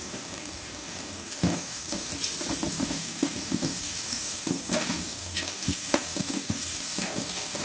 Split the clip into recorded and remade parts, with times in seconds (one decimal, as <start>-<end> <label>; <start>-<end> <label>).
0.0-2.1 remade; 2.1-2.7 recorded; 2.7-7.6 remade

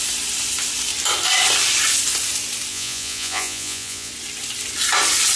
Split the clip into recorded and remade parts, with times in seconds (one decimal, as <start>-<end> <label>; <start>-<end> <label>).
0.0-2.7 recorded; 2.7-4.1 remade; 4.1-5.4 recorded

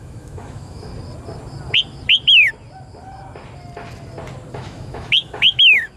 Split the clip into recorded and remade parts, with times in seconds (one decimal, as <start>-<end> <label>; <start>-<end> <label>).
0.0-0.9 remade; 0.9-4.5 recorded; 4.5-6.0 remade

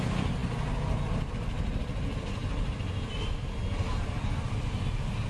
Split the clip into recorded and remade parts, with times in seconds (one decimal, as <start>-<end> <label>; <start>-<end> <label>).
0.0-5.3 recorded

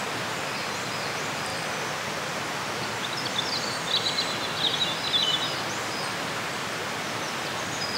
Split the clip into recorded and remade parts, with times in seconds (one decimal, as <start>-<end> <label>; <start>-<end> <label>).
0.0-8.0 recorded

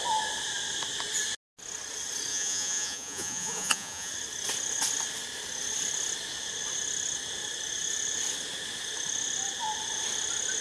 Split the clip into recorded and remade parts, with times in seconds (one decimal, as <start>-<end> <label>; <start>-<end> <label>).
0.0-2.3 recorded; 2.3-4.1 remade; 4.1-10.6 recorded

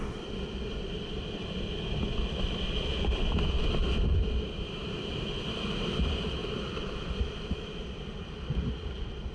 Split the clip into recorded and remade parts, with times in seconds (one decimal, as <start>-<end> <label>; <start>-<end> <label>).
0.0-9.3 recorded